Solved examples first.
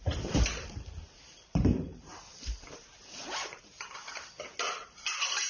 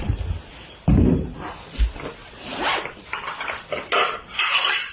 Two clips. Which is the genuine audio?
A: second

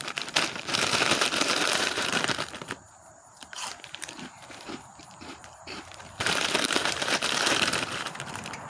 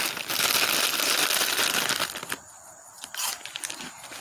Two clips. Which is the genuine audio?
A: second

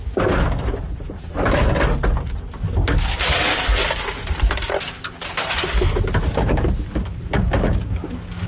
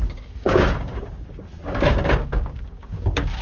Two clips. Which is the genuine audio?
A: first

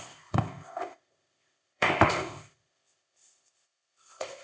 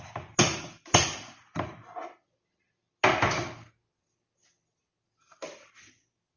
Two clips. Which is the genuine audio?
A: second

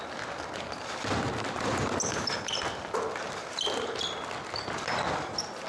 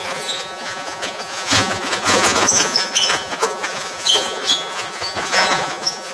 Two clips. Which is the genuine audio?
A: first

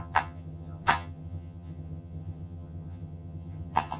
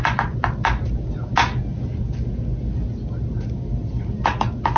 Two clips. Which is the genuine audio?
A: second